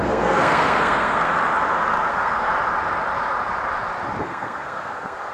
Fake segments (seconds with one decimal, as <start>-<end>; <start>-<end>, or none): 0.0-1.3; 2.1-2.5; 4.2-5.3